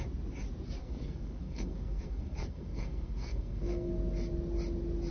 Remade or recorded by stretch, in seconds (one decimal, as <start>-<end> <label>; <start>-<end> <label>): 0.0-0.8 recorded; 0.8-3.9 remade; 3.9-5.1 recorded